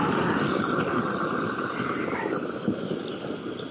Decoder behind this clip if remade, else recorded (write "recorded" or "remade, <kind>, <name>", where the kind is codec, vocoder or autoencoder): recorded